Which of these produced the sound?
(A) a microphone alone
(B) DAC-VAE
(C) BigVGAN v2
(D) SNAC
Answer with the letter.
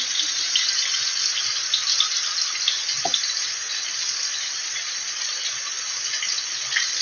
A